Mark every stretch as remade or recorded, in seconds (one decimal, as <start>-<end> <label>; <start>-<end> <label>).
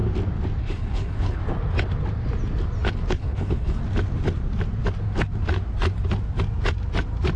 0.0-0.6 recorded; 0.6-1.4 remade; 1.4-3.1 recorded; 3.1-3.8 remade; 3.8-7.4 recorded